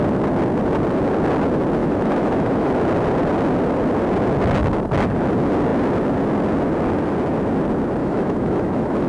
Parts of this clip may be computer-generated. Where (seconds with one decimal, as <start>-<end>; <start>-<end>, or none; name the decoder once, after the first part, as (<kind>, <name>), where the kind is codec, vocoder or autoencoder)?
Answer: 1.8-2.7 (autoencoder, DAC-VAE); 8.0-9.1